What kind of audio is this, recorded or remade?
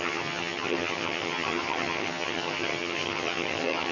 remade